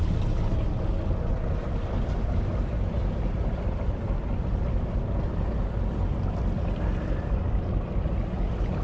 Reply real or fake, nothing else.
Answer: real